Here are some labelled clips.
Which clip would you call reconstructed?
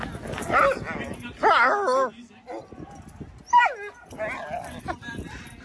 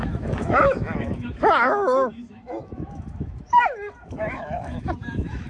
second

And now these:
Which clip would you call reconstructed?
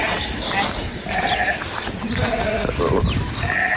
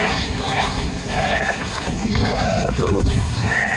second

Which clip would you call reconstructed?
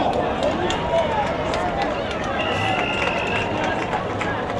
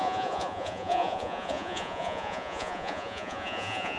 second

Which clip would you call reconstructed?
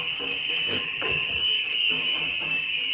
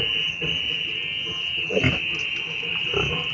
first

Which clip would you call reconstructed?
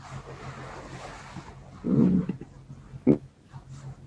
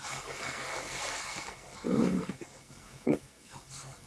second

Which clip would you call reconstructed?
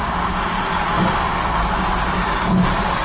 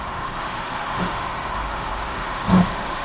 second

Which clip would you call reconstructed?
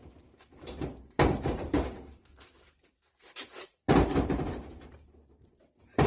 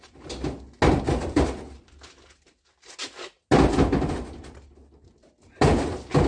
first